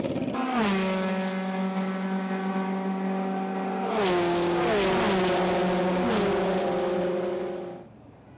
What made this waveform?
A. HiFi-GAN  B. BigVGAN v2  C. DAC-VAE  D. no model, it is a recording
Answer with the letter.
D